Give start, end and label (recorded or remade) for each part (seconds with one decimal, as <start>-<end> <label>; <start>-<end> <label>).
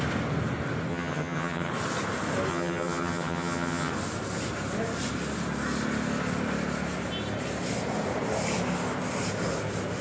0.0-0.9 recorded; 0.9-1.7 remade; 1.7-2.5 recorded; 2.5-3.9 remade; 3.9-10.0 recorded